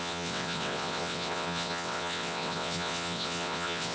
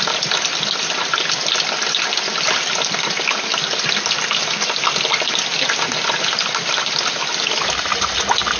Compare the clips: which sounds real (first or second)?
second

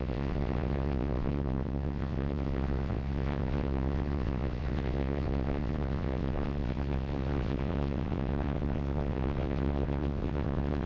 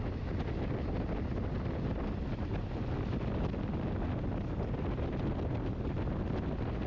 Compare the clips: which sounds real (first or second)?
second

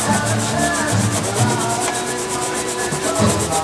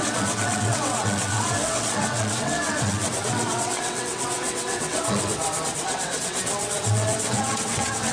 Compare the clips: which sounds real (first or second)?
first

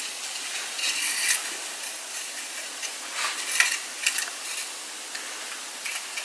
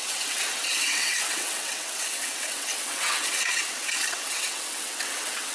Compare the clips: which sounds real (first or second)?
first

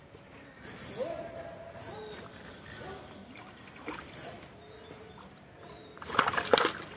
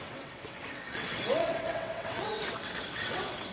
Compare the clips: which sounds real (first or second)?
first